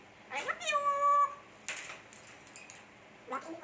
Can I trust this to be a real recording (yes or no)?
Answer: yes